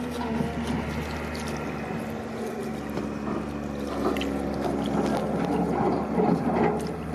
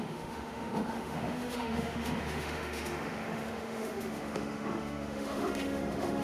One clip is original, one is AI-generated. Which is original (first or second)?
first